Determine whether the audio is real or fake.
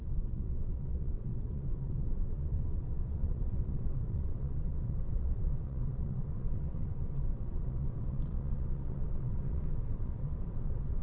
fake